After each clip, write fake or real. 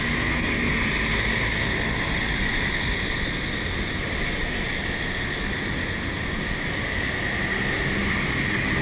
real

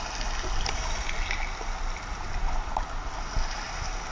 real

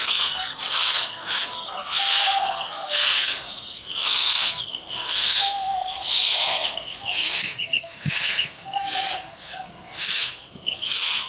fake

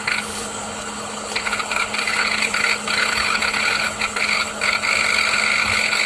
fake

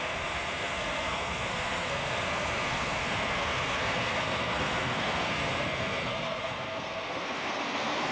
fake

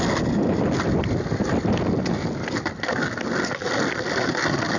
real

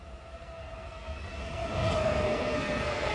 fake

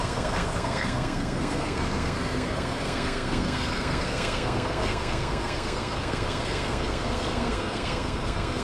fake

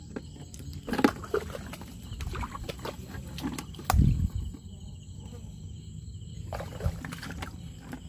real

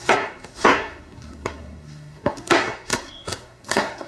fake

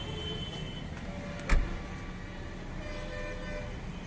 real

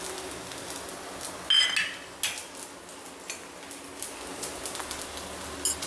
real